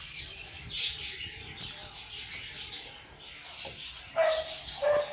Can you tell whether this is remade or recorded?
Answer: recorded